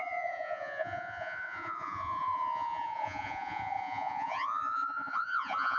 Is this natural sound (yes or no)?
no